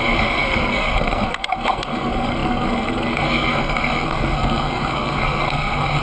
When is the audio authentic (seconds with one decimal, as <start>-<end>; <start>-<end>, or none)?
none